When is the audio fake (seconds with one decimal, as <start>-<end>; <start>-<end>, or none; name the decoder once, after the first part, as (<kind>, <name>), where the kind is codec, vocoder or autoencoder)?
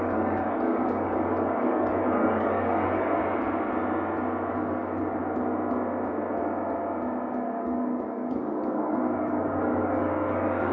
0.0-3.2 (codec, DAC); 4.5-5.2; 7.3-10.7